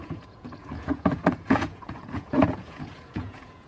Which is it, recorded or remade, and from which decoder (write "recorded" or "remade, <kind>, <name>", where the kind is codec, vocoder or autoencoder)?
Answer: remade, vocoder, Vocos